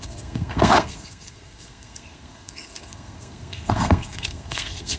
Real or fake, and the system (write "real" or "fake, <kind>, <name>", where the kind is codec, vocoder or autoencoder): fake, codec, SNAC